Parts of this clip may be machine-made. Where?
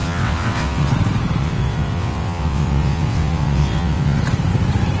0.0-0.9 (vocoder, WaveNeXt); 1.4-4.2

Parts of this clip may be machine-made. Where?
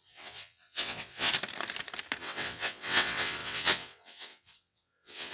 0.0-1.3 (vocoder, WaveNeXt); 2.2-5.3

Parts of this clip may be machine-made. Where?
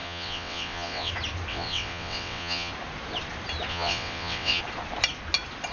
0.0-1.1 (vocoder, WaveNeXt); 1.5-2.7; 3.7-4.6